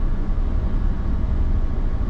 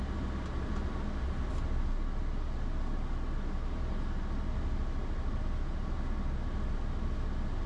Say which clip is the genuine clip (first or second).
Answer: second